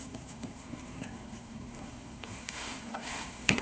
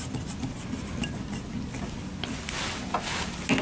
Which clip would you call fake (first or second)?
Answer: first